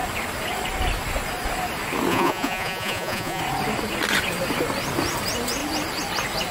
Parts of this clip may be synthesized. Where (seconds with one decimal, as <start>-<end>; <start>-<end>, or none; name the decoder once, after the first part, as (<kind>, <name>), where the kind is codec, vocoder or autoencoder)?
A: 2.1-3.4 (vocoder, Vocos)